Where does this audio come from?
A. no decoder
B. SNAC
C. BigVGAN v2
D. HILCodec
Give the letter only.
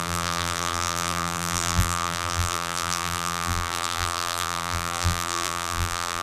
C